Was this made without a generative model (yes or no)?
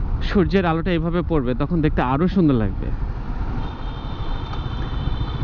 yes